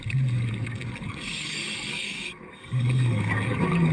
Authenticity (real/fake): fake